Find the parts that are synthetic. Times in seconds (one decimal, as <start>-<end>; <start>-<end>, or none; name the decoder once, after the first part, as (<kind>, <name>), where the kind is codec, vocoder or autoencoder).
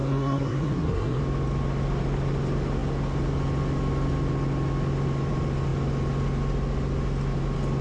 0.0-1.2 (codec, SNAC)